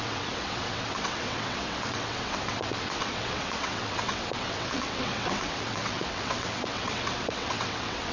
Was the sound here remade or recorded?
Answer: remade